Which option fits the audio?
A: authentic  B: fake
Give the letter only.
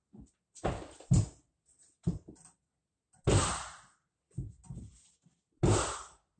A